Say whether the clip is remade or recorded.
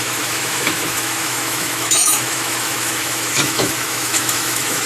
remade